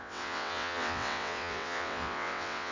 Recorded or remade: remade